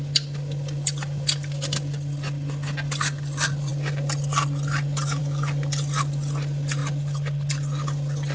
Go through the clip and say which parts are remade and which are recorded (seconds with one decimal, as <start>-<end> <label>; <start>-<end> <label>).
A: 0.0-8.3 recorded